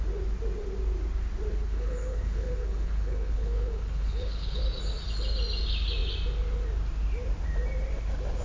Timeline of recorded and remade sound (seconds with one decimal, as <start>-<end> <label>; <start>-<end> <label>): 0.0-1.5 recorded; 1.5-4.6 remade; 4.6-8.4 recorded